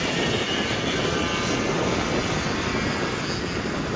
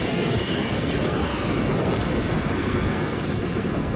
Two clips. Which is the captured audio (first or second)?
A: first